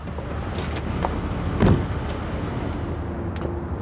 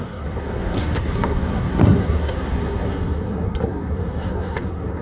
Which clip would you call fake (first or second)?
second